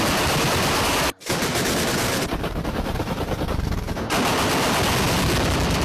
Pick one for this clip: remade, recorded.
recorded